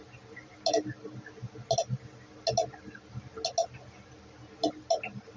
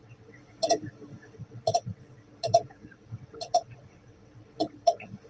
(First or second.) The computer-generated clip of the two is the second